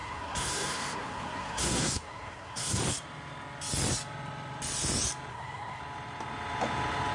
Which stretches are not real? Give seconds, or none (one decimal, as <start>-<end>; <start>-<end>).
0.0-2.8; 5.3-5.8